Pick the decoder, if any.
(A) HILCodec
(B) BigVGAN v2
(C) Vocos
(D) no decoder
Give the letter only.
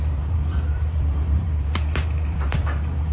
B